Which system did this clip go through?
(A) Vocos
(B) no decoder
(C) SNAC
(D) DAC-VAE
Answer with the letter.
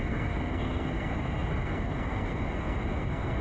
C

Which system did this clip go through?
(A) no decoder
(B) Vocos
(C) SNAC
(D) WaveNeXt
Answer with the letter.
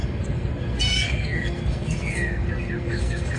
C